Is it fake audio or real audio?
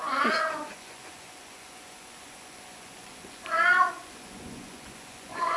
fake